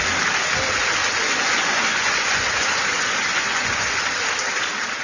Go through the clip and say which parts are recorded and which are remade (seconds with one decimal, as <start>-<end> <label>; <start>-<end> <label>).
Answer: 0.0-1.0 recorded; 1.0-4.0 remade; 4.0-5.0 recorded

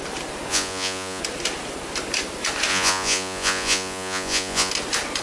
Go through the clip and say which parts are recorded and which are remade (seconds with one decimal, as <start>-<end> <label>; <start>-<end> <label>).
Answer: 0.0-0.5 recorded; 0.5-1.2 remade; 1.2-2.7 recorded; 2.7-4.7 remade; 4.7-5.2 recorded

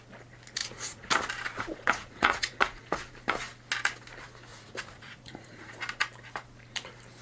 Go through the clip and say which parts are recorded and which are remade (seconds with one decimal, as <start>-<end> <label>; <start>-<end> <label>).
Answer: 0.0-0.6 recorded; 0.6-1.1 remade; 1.1-1.5 recorded; 1.5-3.1 remade; 3.1-4.5 recorded; 4.5-5.8 remade; 5.8-7.2 recorded

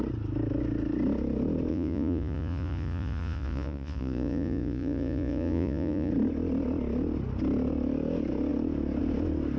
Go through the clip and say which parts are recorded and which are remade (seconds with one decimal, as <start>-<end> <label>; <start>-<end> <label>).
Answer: 0.0-1.7 recorded; 1.7-6.1 remade; 6.1-9.6 recorded

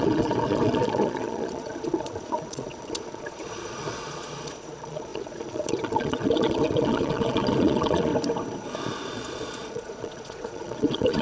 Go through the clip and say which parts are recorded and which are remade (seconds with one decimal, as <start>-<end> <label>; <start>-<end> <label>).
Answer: 0.0-8.1 remade; 8.1-9.1 recorded; 9.1-11.2 remade